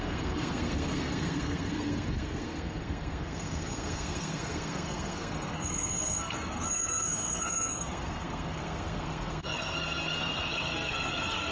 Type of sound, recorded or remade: remade